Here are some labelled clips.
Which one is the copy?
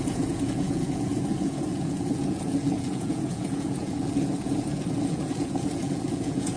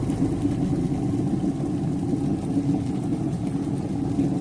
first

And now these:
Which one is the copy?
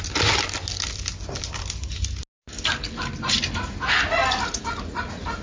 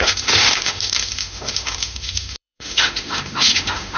second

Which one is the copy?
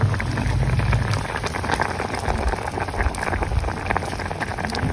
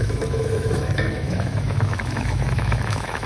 second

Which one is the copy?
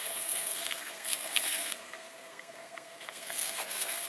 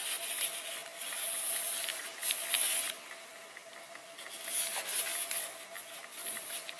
first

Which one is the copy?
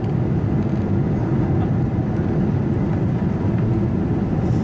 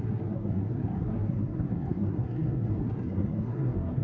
second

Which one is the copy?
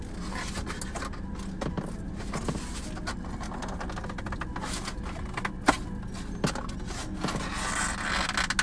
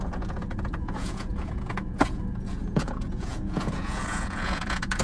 second